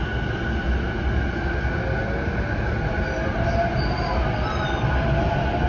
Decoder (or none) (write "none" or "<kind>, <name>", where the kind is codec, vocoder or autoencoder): none